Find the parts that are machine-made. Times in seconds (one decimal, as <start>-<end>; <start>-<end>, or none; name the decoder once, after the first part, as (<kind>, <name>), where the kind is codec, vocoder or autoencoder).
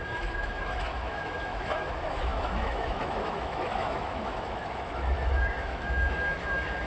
0.0-6.9 (autoencoder, DAC-VAE)